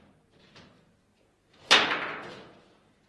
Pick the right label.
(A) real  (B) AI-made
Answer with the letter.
A